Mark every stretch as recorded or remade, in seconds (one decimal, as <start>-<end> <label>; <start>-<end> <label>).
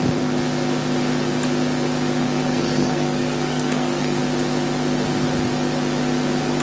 0.0-2.2 recorded; 2.2-4.2 remade; 4.2-6.6 recorded